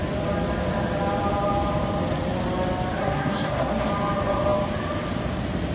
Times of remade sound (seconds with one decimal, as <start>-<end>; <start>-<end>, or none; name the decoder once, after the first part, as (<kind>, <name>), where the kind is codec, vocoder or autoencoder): 3.0-3.9 (codec, SNAC)